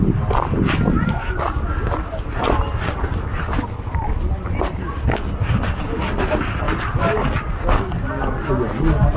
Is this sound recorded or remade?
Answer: recorded